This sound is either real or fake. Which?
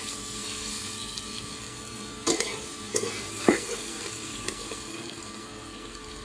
fake